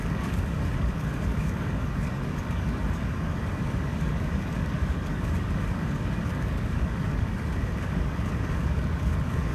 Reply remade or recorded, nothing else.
remade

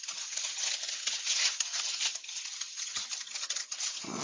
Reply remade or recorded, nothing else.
remade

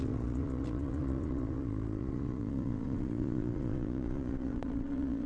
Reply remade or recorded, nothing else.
remade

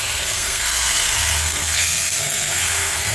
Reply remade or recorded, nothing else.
remade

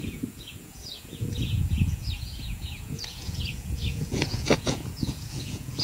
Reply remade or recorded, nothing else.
remade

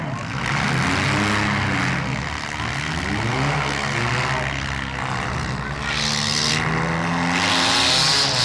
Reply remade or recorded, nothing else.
recorded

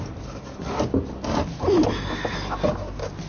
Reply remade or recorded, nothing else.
recorded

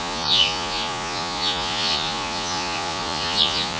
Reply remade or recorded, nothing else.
remade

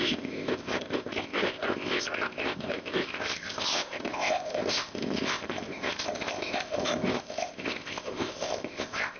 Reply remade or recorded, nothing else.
remade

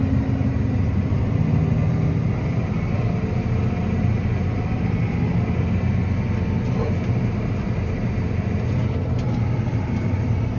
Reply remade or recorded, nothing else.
recorded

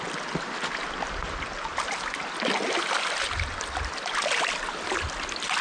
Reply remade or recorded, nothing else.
recorded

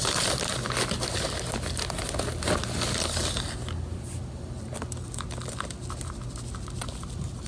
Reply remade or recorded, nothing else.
recorded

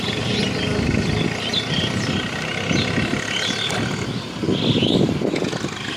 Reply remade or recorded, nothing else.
recorded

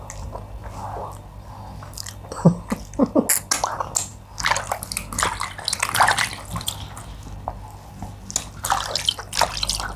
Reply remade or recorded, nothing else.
recorded